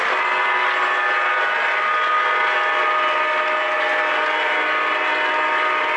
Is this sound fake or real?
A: real